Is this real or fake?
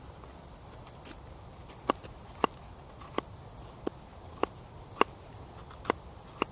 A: real